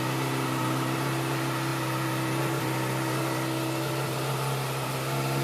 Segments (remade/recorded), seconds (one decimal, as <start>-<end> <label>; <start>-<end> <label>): 0.0-5.4 recorded